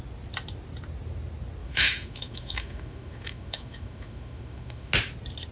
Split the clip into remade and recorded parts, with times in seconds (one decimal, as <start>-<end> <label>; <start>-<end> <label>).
0.0-1.6 recorded; 1.6-4.9 remade; 4.9-5.5 recorded

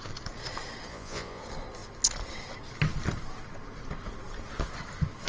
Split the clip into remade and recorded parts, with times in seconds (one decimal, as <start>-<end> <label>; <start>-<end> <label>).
0.0-0.9 recorded; 0.9-1.4 remade; 1.4-5.3 recorded

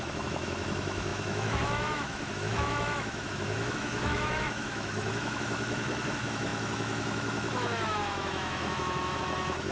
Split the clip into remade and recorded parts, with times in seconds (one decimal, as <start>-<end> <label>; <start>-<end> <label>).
0.0-9.7 remade

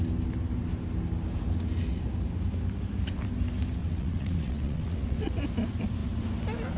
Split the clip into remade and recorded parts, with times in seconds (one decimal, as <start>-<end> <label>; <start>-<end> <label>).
0.0-3.8 recorded; 3.8-5.3 remade; 5.3-6.8 recorded

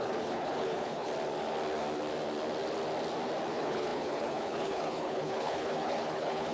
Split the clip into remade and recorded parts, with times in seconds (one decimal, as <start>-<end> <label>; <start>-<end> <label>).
0.0-1.1 remade; 1.1-3.5 recorded; 3.5-6.5 remade

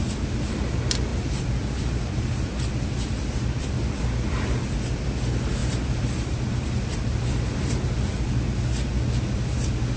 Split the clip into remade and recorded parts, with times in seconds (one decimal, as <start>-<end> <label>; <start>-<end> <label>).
0.0-1.1 recorded; 1.1-3.7 remade; 3.7-5.6 recorded; 5.6-7.8 remade; 7.8-10.0 recorded

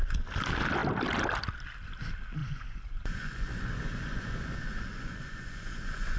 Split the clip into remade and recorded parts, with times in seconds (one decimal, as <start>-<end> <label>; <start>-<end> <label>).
0.0-2.4 recorded; 2.4-6.2 remade

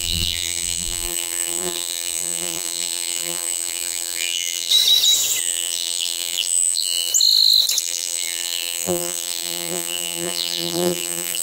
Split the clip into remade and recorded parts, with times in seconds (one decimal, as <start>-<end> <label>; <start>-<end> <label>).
0.0-4.7 remade; 4.7-5.4 recorded; 5.4-7.1 remade; 7.1-7.8 recorded; 7.8-11.4 remade